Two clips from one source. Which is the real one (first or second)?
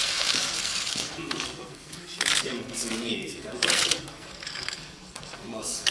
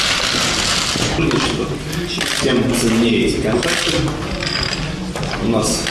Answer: second